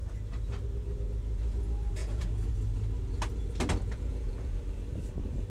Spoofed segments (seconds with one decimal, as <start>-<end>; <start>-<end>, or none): 2.0-2.5; 3.8-4.6